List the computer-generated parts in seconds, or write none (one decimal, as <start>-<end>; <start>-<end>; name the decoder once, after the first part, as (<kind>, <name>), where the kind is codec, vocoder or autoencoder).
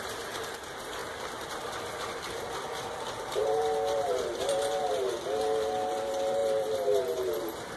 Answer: 0.0-1.0 (vocoder, BigVGAN v2); 1.5-7.8